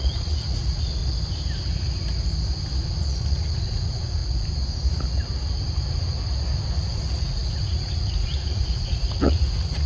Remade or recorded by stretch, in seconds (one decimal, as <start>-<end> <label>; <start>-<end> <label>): 0.0-1.0 remade; 1.0-2.9 recorded; 2.9-4.2 remade; 4.2-6.7 recorded; 6.7-9.9 remade